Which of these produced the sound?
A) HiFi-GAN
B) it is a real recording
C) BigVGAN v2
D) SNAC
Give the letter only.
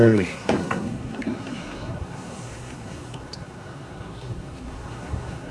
D